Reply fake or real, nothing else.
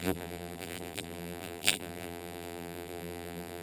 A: fake